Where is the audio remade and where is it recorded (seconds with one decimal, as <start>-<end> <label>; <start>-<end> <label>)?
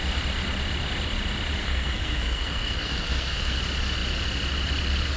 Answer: 0.0-1.6 recorded; 1.6-3.6 remade; 3.6-5.2 recorded